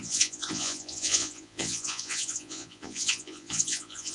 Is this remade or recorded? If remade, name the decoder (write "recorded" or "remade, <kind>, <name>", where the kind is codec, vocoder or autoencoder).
remade, vocoder, Vocos